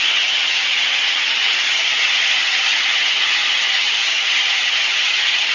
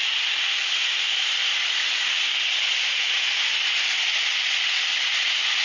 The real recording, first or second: second